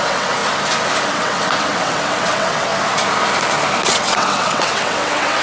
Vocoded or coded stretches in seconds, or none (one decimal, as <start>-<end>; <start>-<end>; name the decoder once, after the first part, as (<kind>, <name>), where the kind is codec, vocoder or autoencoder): 0.0-0.4 (vocoder, WaveNeXt); 1.1-2.7; 3.9-5.4